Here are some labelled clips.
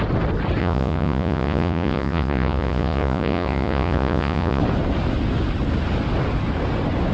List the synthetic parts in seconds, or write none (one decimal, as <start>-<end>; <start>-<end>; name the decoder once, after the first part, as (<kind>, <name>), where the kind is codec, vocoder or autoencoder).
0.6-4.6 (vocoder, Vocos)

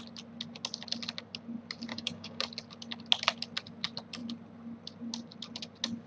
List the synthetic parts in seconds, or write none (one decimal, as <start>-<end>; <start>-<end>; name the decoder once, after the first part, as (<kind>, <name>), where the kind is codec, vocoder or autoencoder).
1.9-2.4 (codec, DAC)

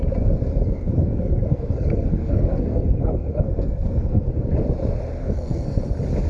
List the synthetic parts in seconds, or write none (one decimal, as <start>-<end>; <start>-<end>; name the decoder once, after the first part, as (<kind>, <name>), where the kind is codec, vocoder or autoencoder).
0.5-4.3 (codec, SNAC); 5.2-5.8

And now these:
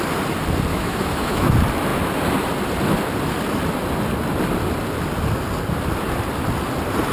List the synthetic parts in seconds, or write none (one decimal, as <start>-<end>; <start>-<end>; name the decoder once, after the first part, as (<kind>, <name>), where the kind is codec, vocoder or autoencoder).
0.7-1.5 (autoencoder, DAC-VAE)

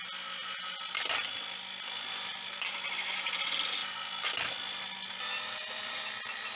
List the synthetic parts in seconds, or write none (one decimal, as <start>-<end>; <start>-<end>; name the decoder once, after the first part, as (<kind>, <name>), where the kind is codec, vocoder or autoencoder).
none

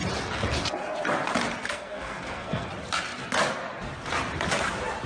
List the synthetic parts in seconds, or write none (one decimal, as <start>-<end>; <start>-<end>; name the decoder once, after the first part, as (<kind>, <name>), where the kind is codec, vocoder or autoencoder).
1.6-2.7 (codec, SNAC)